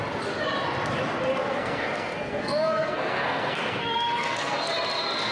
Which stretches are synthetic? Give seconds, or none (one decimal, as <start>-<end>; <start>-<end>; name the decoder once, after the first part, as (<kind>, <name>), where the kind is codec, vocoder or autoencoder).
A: 1.5-4.7 (codec, SNAC)